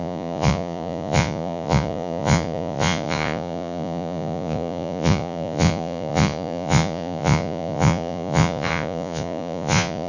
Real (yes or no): no